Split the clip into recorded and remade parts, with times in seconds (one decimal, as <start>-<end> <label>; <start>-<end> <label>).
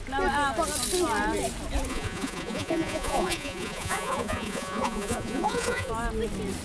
0.0-1.9 recorded; 1.9-5.9 remade; 5.9-6.6 recorded